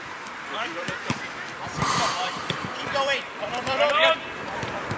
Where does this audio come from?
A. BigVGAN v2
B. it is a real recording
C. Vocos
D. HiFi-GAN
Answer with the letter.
A